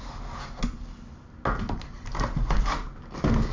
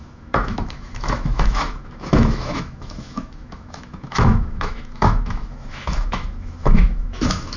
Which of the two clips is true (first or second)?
first